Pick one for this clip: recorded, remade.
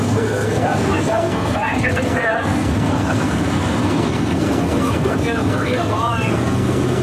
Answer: remade